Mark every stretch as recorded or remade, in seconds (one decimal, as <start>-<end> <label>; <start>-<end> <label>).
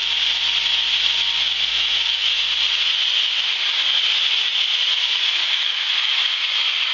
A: 0.0-1.7 recorded; 1.7-2.4 remade; 2.4-5.4 recorded; 5.4-6.1 remade; 6.1-6.9 recorded